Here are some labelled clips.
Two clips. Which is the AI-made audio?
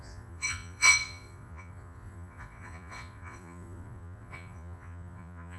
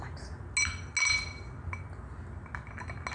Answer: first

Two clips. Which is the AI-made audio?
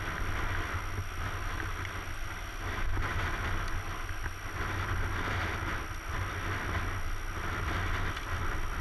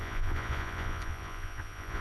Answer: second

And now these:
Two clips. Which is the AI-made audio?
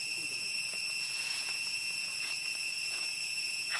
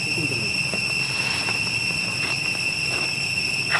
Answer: first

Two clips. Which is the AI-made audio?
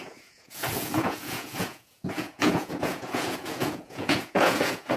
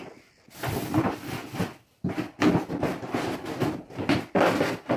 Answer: first